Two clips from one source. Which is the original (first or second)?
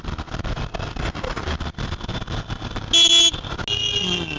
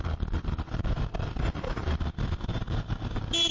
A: first